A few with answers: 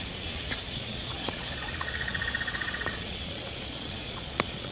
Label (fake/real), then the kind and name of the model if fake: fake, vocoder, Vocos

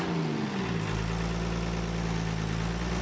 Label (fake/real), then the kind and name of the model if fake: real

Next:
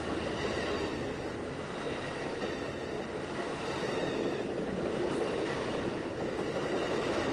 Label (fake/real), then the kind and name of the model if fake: real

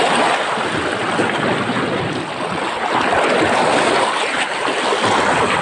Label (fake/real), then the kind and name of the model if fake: real